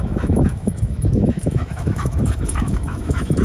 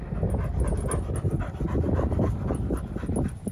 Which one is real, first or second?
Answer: second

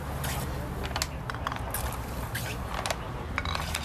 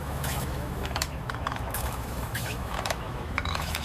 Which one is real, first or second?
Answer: first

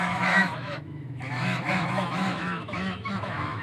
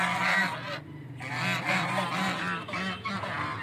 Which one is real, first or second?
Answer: second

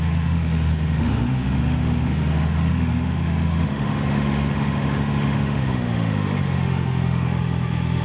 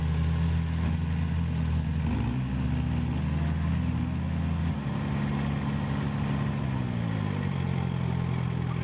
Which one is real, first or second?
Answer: second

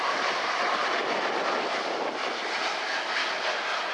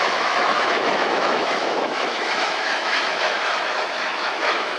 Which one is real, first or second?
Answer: first